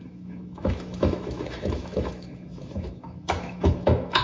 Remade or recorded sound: remade